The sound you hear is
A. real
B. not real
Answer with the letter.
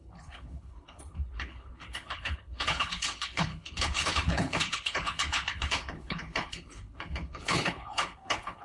B